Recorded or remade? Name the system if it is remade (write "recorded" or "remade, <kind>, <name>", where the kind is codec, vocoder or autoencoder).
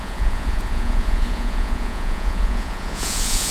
remade, vocoder, Vocos